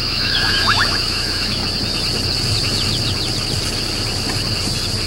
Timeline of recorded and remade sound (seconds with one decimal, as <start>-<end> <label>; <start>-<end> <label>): 0.0-1.6 remade; 1.6-5.1 recorded